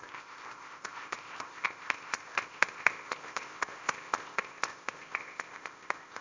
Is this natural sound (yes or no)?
no